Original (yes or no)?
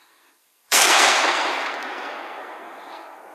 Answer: no